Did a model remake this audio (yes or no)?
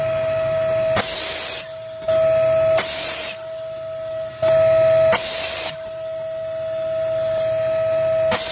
no